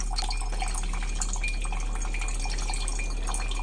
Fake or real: real